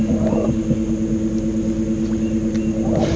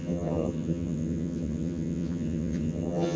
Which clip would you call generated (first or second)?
second